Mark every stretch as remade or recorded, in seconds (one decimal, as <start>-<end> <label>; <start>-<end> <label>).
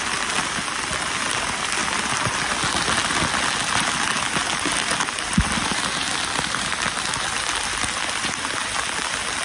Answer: 0.0-9.4 recorded